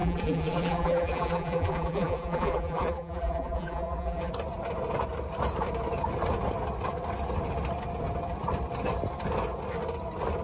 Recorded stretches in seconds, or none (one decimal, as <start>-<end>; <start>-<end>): 4.3-10.4

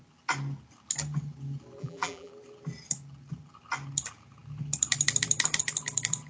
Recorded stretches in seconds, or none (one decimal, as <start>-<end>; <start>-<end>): 0.0-1.8; 2.3-6.3

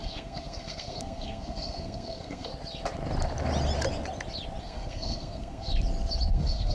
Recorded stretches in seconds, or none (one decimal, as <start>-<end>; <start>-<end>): 2.5-4.6; 5.7-6.3

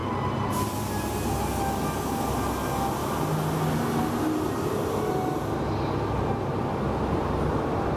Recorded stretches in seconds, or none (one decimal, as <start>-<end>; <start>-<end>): 0.0-8.0

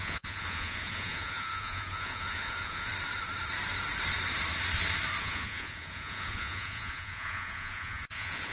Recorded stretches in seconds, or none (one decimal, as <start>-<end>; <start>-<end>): 2.9-5.2